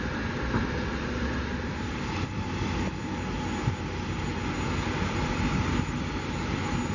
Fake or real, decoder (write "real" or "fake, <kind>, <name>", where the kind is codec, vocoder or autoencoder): real